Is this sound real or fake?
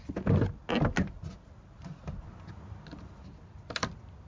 real